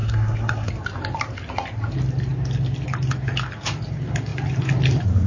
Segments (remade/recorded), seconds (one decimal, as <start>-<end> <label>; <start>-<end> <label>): 0.0-0.7 remade; 0.7-5.3 recorded